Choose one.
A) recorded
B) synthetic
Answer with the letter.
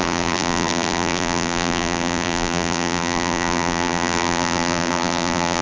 B